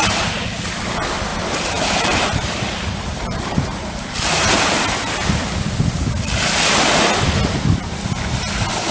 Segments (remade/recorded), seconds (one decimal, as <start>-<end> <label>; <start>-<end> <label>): 0.0-1.3 recorded; 1.3-4.5 remade; 4.5-8.9 recorded